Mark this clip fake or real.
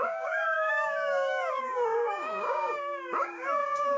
fake